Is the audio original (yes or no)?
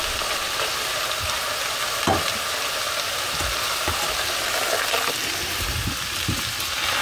yes